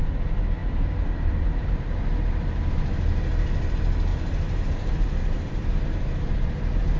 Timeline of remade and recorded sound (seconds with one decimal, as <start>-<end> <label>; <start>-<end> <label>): 0.0-0.6 recorded; 0.6-2.1 remade; 2.1-4.1 recorded; 4.1-6.2 remade; 6.2-7.0 recorded